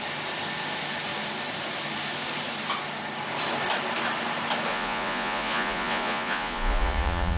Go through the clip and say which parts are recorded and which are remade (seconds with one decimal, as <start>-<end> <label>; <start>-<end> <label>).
0.0-4.7 recorded; 4.7-7.4 remade